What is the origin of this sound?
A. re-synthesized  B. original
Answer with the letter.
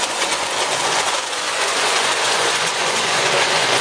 A